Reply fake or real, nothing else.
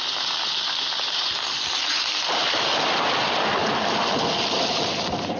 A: real